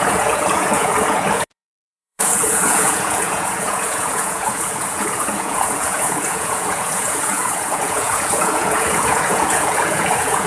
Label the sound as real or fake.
fake